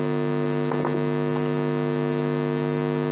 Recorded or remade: recorded